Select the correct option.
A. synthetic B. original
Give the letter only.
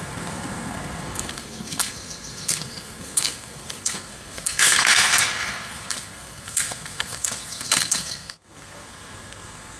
A